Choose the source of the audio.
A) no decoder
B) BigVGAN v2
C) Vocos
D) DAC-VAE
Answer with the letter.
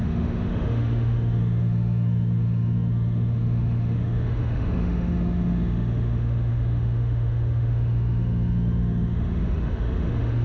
D